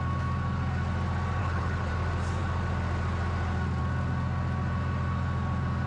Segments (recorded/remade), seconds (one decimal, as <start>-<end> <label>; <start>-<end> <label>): 0.0-1.4 recorded; 1.4-1.9 remade; 1.9-5.9 recorded